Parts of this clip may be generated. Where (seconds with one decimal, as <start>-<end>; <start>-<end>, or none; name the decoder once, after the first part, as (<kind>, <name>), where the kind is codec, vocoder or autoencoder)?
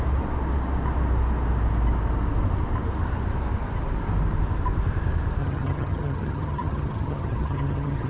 5.4-8.1 (vocoder, HiFi-GAN)